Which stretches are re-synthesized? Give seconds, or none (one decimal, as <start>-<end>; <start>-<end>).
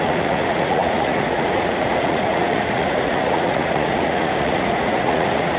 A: 0.0-5.6